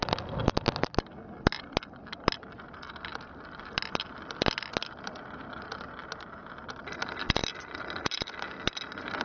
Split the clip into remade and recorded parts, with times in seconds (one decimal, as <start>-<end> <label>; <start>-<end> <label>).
0.0-9.2 recorded